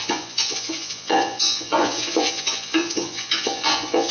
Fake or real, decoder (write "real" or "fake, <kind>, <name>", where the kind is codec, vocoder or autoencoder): fake, vocoder, Vocos